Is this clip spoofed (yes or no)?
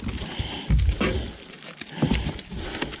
no